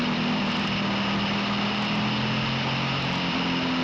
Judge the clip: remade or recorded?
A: recorded